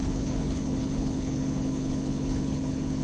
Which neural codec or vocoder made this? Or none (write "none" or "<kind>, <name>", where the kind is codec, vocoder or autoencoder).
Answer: codec, HILCodec